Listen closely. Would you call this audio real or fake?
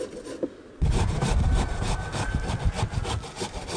real